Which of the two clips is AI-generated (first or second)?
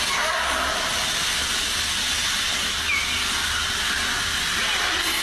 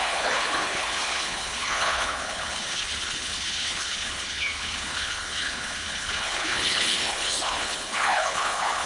second